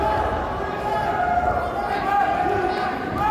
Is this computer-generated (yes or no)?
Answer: no